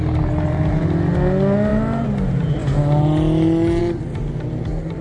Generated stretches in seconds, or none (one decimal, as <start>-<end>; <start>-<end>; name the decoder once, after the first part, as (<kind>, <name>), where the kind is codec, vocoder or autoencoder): none